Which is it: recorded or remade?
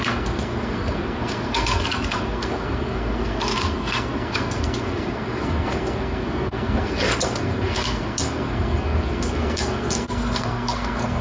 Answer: remade